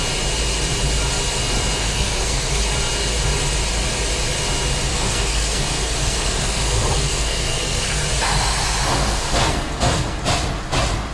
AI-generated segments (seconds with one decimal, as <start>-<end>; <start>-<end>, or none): 1.8-2.6; 4.9-8.0; 8.9-10.2